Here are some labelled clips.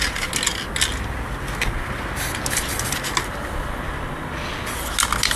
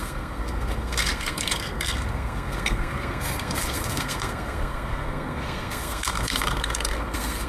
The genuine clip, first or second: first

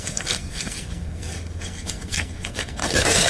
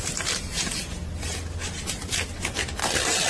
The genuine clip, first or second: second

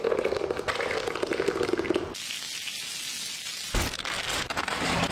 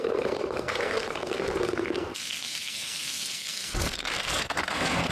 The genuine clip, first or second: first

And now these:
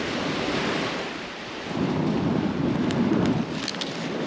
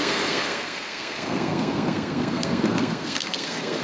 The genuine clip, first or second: first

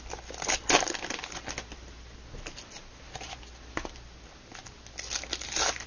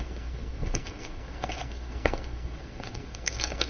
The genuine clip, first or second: first